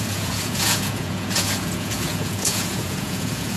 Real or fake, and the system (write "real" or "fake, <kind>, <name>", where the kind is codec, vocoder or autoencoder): fake, vocoder, Vocos